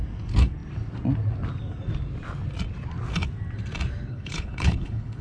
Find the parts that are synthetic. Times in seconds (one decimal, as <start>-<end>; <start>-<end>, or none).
4.1-5.2